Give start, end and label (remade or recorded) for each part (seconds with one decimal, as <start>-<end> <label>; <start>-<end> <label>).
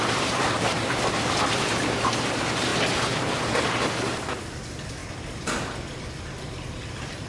0.0-2.7 remade; 2.7-4.4 recorded; 4.4-5.0 remade; 5.0-6.0 recorded; 6.0-7.3 remade